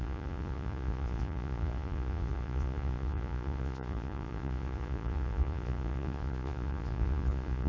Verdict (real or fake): fake